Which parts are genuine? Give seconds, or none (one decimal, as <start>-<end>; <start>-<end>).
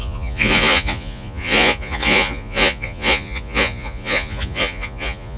none